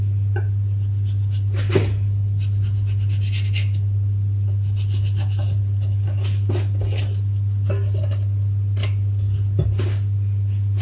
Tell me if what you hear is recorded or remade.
recorded